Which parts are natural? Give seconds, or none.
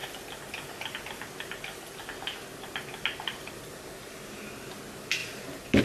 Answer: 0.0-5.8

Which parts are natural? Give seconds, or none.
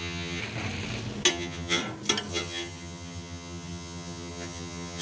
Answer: 0.4-1.3; 1.8-2.3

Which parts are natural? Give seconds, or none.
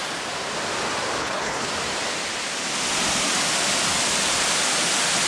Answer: 0.0-1.2; 1.7-5.3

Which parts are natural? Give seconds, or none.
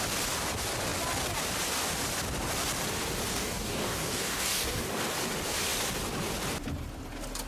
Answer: 0.0-3.3; 4.8-7.5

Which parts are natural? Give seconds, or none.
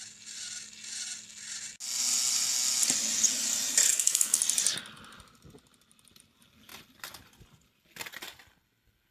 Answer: 0.0-3.9; 4.4-9.1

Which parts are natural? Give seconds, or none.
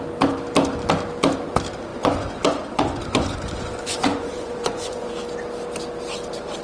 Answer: 0.0-1.9; 5.1-6.6